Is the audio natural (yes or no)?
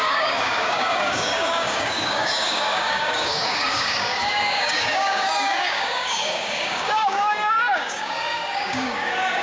no